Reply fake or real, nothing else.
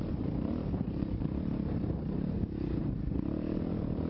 fake